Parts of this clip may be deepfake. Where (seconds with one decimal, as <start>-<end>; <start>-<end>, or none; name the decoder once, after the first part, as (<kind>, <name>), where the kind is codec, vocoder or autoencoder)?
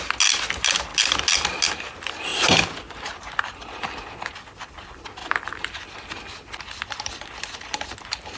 5.2-5.8 (vocoder, BigVGAN v2)